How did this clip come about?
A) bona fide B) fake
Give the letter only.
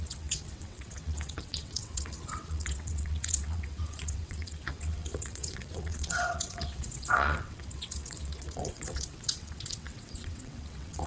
B